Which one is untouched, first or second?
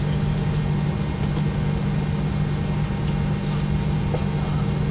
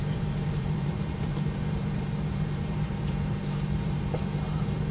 first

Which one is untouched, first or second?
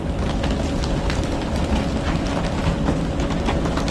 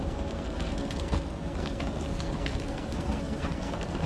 first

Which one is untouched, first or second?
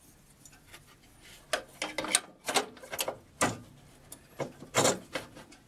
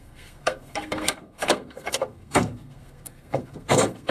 first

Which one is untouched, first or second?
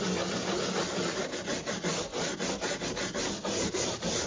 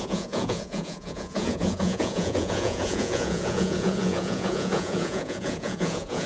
first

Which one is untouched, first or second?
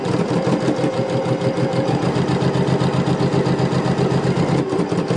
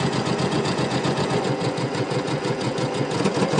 first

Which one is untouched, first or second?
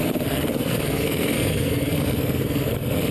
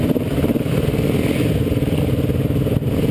second